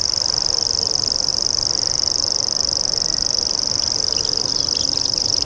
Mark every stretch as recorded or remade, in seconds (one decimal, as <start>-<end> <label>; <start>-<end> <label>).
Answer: 0.0-5.4 remade